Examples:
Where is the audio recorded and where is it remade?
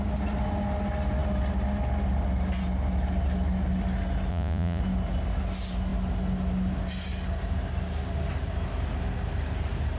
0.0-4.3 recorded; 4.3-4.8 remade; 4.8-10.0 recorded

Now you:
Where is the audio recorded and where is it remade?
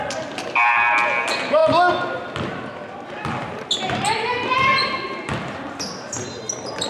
0.0-6.9 recorded